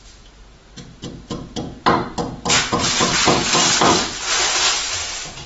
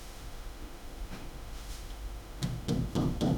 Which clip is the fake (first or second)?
second